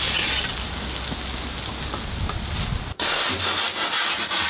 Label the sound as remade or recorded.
recorded